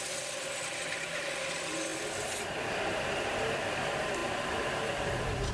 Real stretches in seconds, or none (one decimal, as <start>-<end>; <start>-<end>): 0.0-5.5